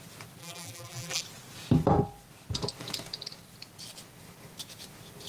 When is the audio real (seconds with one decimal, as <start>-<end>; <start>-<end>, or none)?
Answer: 0.0-0.4; 1.2-5.3